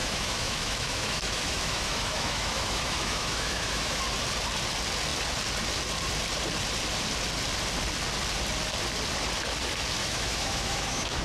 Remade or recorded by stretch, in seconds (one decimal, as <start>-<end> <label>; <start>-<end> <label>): 0.0-4.0 remade; 4.0-10.0 recorded; 10.0-11.2 remade

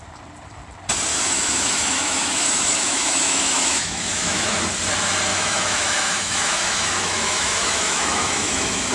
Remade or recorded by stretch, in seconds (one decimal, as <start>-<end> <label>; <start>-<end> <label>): 0.0-1.1 recorded; 1.1-4.6 remade; 4.6-5.3 recorded; 5.3-8.9 remade

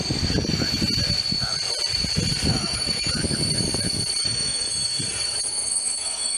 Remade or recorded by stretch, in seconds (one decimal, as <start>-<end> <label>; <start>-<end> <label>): 0.0-2.5 recorded; 2.5-3.1 remade; 3.1-4.2 recorded; 4.2-4.7 remade; 4.7-5.5 recorded; 5.5-6.4 remade

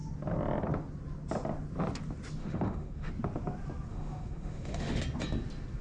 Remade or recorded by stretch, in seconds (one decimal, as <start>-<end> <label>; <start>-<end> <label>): 0.0-2.4 recorded; 2.4-3.1 remade; 3.1-3.9 recorded; 3.9-5.0 remade; 5.0-5.8 recorded

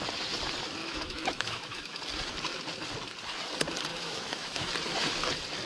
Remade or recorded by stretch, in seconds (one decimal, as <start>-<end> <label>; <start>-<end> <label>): 0.0-0.8 recorded; 0.8-2.0 remade; 2.0-3.9 recorded; 3.9-4.7 remade; 4.7-5.7 recorded

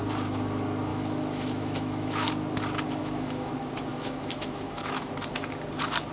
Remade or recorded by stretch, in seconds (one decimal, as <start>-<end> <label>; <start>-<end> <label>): 0.0-0.9 recorded; 0.9-2.3 remade; 2.3-3.0 recorded; 3.0-3.5 remade; 3.5-3.9 recorded; 3.9-5.1 remade; 5.1-6.1 recorded

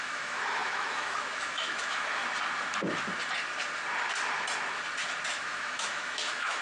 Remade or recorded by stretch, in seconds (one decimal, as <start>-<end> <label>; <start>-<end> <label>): 0.0-2.2 remade; 2.2-5.3 recorded; 5.3-6.6 remade